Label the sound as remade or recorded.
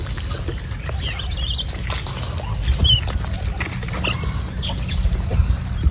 recorded